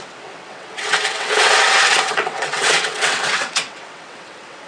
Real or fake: fake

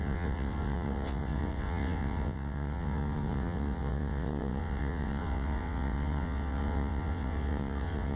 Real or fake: fake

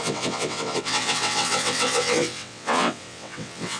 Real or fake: fake